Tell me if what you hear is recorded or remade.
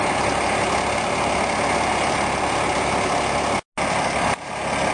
recorded